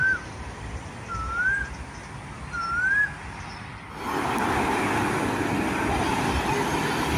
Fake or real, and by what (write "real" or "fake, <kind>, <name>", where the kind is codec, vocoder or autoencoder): real